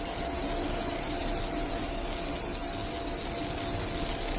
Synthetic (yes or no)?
no